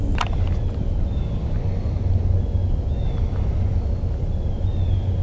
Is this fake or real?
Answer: real